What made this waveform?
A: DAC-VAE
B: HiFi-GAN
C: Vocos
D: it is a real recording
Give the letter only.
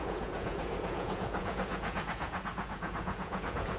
C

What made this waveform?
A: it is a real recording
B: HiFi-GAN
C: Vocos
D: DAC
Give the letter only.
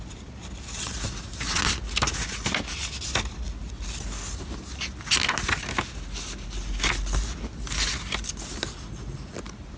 A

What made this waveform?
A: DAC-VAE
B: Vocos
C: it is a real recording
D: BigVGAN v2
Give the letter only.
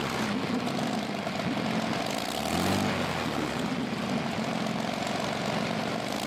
C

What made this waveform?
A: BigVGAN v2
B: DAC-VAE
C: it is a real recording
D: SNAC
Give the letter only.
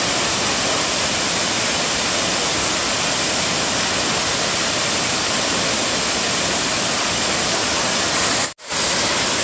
C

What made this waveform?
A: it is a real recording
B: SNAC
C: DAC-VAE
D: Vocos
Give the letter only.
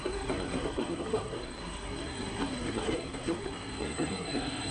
B